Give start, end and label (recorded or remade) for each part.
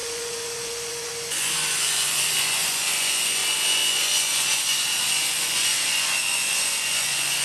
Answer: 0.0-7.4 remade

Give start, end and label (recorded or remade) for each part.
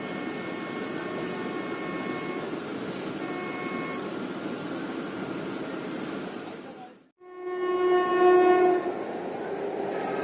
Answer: 0.0-10.2 recorded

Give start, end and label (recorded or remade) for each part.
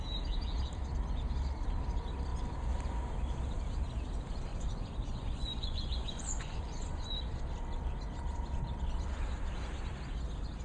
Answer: 0.0-4.5 recorded; 4.5-7.1 remade; 7.1-10.6 recorded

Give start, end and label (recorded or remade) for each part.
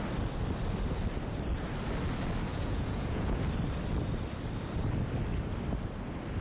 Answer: 0.0-2.5 recorded; 2.5-3.4 remade; 3.4-6.4 recorded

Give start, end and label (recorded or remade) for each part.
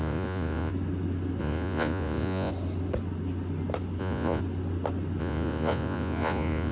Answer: 0.0-0.7 remade; 0.7-1.4 recorded; 1.4-2.5 remade; 2.5-4.0 recorded; 4.0-4.4 remade; 4.4-5.2 recorded; 5.2-6.7 remade